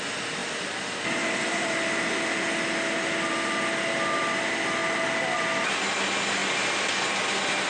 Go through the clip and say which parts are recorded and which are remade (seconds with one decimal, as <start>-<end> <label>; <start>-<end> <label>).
0.0-7.7 recorded